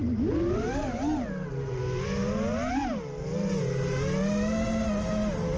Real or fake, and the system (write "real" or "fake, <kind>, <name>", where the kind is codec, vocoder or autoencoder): real